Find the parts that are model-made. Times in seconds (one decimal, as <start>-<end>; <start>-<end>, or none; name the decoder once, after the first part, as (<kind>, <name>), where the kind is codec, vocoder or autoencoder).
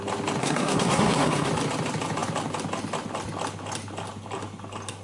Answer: 0.4-1.5 (codec, SNAC)